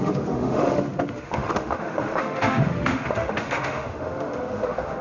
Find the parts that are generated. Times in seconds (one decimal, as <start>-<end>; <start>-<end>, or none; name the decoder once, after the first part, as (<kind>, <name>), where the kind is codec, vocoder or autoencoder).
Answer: 0.0-5.0 (autoencoder, DAC-VAE)

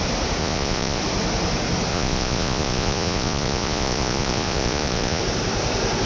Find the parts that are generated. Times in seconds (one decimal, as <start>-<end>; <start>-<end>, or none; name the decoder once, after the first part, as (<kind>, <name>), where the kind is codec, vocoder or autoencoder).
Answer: 0.4-1.0 (vocoder, Vocos); 1.9-5.2

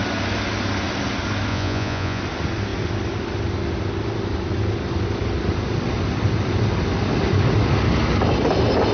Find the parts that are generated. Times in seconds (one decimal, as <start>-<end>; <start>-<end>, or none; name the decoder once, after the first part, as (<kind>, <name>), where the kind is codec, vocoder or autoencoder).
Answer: 1.5-2.2 (vocoder, Vocos)

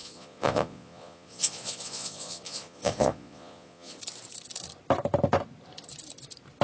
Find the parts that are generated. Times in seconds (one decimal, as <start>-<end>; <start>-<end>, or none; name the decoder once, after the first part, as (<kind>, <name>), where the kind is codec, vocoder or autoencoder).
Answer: 0.0-4.0 (vocoder, Vocos)

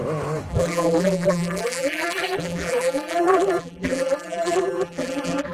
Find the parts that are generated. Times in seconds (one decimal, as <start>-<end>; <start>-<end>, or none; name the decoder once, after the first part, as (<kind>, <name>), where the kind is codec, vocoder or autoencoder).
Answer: 0.5-5.5 (vocoder, BigVGAN v2)

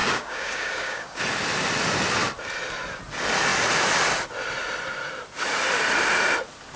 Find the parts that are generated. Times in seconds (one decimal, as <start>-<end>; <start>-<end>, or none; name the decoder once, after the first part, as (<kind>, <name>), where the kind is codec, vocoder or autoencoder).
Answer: 0.0-1.2 (codec, DAC)